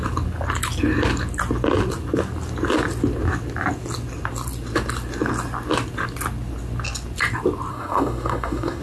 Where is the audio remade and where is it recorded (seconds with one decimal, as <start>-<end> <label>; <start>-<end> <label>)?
0.0-7.7 recorded; 7.7-8.8 remade